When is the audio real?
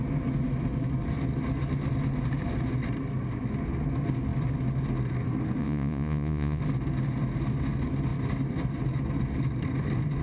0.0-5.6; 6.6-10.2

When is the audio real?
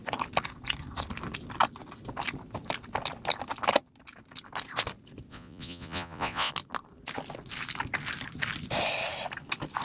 0.0-5.3; 6.5-9.8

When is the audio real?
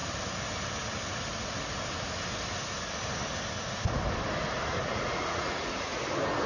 0.0-4.8; 5.9-6.5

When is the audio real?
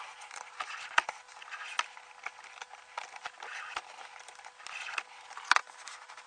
0.0-6.3